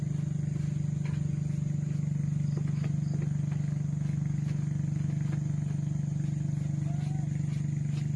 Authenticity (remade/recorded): recorded